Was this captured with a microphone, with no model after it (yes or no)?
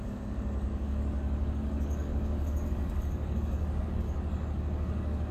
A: no